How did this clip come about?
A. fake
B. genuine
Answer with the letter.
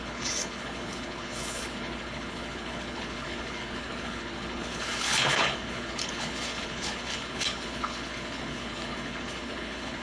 A